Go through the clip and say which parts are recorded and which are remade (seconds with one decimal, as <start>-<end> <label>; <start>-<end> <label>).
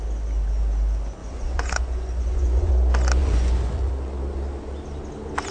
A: 0.0-1.2 recorded; 1.2-2.7 remade; 2.7-3.2 recorded; 3.2-3.9 remade; 3.9-5.5 recorded